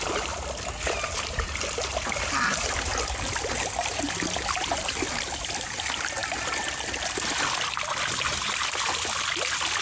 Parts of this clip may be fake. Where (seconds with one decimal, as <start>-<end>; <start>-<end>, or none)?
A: none